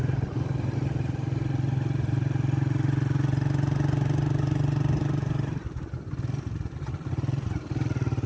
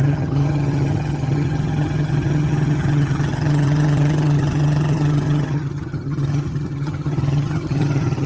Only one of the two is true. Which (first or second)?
first